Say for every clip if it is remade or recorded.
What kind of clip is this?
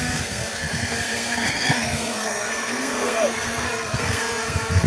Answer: remade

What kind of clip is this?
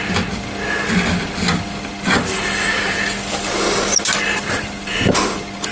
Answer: recorded